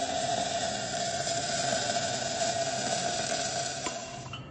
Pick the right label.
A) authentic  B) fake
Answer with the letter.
B